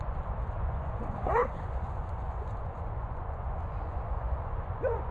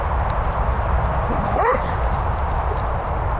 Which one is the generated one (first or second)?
first